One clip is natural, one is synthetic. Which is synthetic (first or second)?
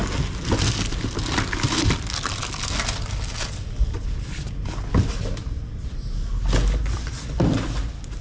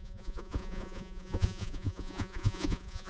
second